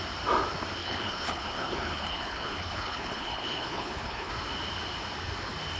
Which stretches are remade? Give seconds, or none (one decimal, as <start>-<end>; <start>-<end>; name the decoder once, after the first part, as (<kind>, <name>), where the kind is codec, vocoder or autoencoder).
0.8-4.3 (codec, HILCodec)